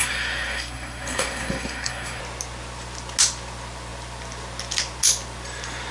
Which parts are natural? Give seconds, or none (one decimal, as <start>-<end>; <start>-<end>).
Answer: 2.2-5.9